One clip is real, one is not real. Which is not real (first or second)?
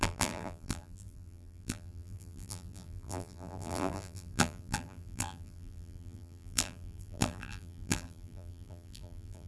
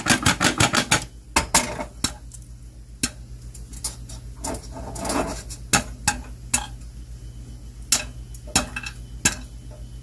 first